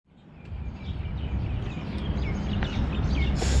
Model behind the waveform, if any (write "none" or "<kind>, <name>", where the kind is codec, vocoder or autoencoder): none